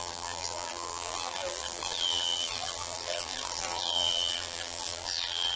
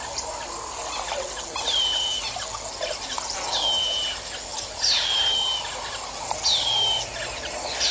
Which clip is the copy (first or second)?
first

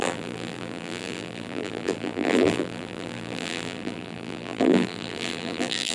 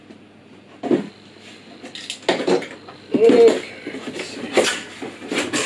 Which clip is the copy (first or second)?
first